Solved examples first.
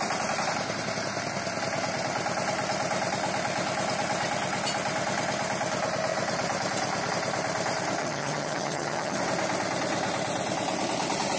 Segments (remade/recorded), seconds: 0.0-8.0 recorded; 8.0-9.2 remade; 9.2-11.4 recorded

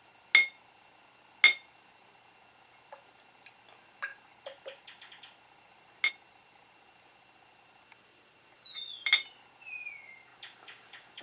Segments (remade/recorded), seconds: 0.0-11.2 recorded

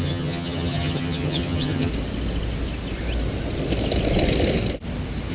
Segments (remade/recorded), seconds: 0.0-1.9 remade; 1.9-5.3 recorded

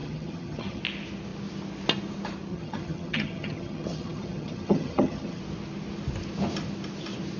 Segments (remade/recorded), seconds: 0.0-0.8 remade; 0.8-2.5 recorded; 2.5-5.4 remade; 5.4-7.4 recorded

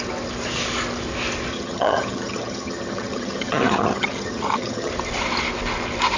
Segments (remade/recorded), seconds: 0.0-1.5 recorded; 1.5-4.9 remade; 4.9-6.2 recorded

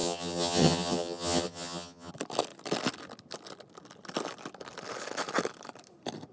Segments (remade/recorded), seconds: 0.0-2.1 remade; 2.1-6.3 recorded

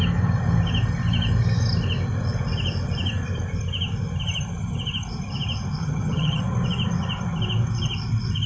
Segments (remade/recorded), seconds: 0.0-5.8 recorded; 5.8-6.4 remade; 6.4-8.5 recorded